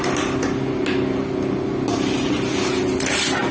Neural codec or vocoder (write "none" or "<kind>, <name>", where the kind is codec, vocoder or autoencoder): none